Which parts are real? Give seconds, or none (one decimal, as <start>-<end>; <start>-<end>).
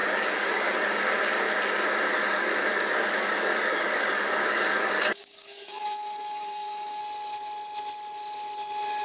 1.2-2.1; 7.0-9.0